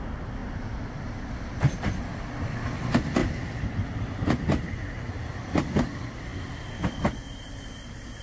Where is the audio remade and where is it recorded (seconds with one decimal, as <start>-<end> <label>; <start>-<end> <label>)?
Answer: 0.0-8.2 recorded